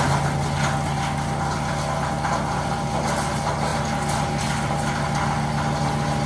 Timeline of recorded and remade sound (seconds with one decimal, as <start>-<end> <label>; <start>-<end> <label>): 0.0-6.3 recorded